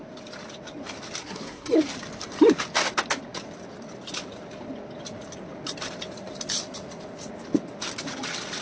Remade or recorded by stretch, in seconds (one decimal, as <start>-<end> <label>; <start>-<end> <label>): 0.0-1.2 recorded; 1.2-1.8 remade; 1.8-8.6 recorded